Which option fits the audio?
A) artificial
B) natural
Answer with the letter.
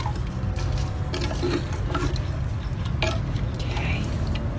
B